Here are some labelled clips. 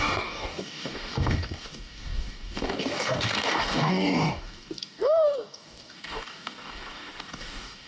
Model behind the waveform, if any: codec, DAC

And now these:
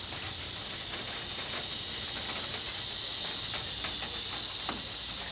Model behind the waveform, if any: none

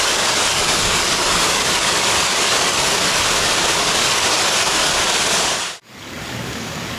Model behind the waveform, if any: codec, DAC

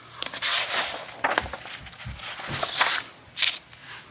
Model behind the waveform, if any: none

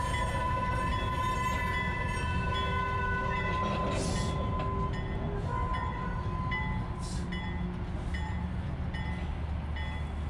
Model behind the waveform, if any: none